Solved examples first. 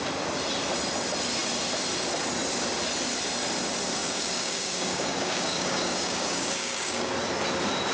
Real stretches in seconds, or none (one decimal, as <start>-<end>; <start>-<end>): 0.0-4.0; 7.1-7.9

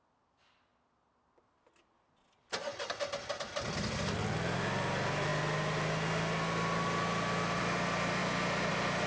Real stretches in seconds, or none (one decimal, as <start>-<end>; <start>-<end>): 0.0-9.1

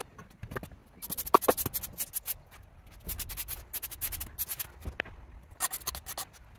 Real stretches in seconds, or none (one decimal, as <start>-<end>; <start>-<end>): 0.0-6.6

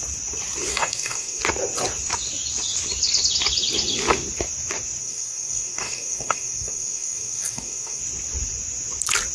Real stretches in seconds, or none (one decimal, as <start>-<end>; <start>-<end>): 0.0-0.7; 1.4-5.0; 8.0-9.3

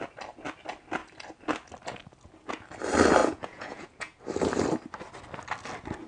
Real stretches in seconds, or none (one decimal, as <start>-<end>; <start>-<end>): 0.0-3.2; 4.2-6.1

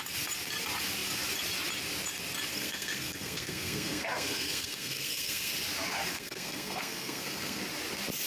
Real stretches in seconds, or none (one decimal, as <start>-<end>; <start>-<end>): 0.0-2.5; 5.5-6.1; 7.6-8.3

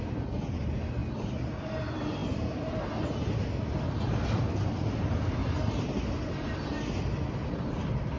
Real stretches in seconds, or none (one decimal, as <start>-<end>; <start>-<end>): 0.0-8.2

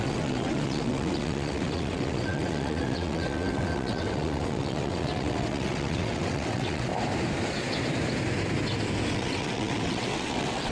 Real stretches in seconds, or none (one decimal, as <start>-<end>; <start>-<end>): 6.9-9.1